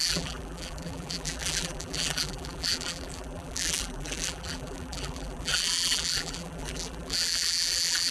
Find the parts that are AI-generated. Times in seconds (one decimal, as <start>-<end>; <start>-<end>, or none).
0.0-8.1